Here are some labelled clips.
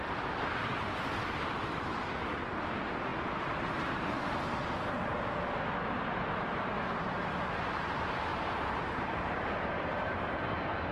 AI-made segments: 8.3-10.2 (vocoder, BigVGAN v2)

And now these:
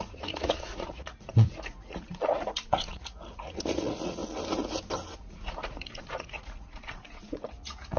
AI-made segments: 0.0-4.2 (vocoder, Vocos); 5.2-8.0

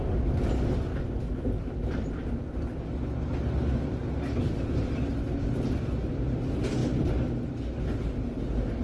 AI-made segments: none

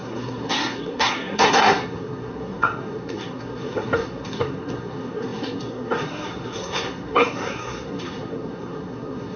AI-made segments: 0.0-9.4 (codec, SNAC)

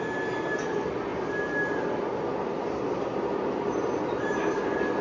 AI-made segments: none